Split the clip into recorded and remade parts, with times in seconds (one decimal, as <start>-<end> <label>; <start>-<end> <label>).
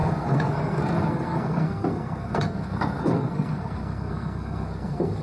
0.0-5.2 remade